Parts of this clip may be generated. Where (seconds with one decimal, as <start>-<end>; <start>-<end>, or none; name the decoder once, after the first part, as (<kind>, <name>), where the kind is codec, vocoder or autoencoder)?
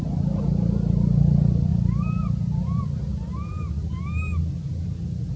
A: none